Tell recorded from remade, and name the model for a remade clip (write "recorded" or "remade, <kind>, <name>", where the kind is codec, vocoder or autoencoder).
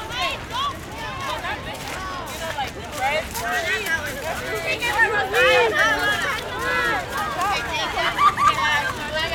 recorded